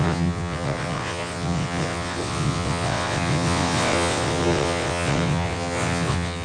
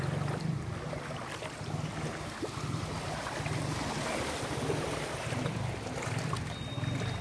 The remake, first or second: first